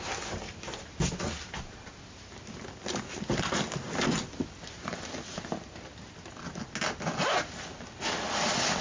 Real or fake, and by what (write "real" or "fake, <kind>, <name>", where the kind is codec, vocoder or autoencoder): real